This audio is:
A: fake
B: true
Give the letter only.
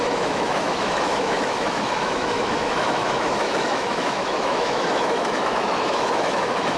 A